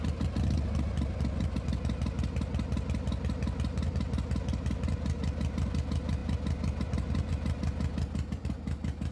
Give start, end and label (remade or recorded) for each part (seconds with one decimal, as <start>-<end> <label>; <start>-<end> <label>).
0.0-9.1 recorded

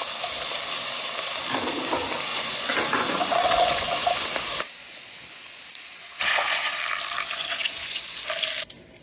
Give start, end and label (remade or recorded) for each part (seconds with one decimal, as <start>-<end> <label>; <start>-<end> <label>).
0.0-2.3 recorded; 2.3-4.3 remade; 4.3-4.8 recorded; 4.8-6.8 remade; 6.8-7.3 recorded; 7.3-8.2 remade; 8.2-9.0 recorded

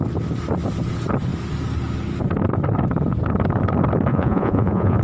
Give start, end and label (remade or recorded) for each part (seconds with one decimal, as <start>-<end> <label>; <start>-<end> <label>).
0.0-4.1 recorded; 4.1-5.0 remade

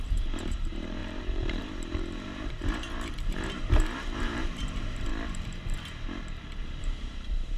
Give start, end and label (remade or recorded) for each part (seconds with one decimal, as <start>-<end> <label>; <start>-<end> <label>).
0.0-5.1 remade; 5.1-6.8 recorded; 6.8-7.6 remade